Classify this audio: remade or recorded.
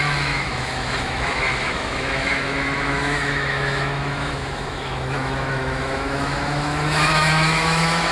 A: remade